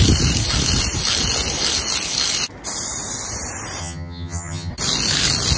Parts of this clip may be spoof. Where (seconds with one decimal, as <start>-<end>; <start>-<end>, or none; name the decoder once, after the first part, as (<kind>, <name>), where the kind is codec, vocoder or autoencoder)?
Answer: 3.8-4.7 (vocoder, HiFi-GAN)